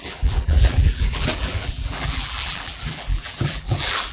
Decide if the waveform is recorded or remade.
remade